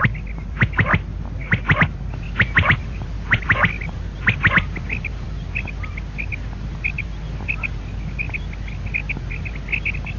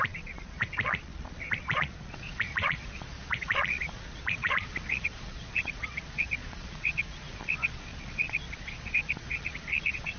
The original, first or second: first